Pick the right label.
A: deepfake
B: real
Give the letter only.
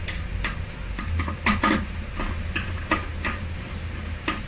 B